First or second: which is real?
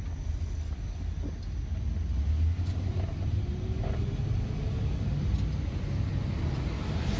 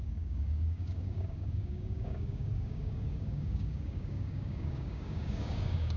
first